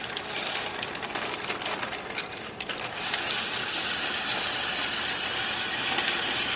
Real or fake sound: real